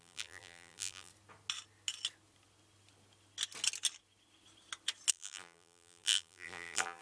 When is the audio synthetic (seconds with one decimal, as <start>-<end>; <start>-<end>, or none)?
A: 0.0-1.1; 5.1-7.0